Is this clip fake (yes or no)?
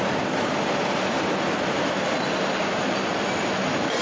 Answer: no